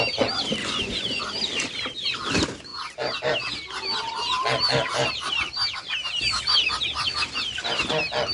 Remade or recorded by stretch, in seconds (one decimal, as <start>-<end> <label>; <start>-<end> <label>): 0.0-0.6 recorded; 0.6-1.2 remade; 1.2-8.3 recorded